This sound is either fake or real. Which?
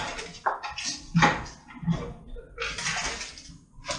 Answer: real